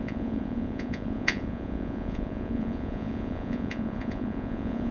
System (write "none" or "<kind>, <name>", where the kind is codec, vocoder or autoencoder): vocoder, Vocos